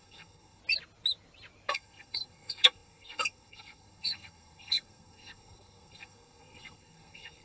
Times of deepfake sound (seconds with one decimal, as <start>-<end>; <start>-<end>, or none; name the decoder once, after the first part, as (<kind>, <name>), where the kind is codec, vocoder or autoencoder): 0.0-0.6 (codec, SNAC); 1.7-7.4